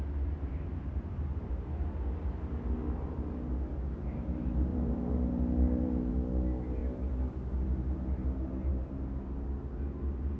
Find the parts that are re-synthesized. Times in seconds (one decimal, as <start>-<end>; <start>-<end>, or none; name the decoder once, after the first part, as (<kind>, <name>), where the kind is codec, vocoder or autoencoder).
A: 0.7-1.5 (vocoder, BigVGAN v2); 4.7-6.1; 6.8-8.7